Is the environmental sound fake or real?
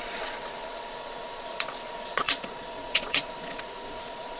fake